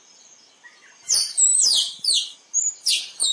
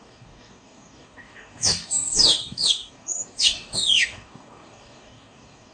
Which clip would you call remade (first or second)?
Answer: second